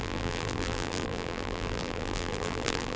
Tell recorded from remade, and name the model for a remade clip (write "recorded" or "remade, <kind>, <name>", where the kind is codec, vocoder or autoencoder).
remade, vocoder, BigVGAN v2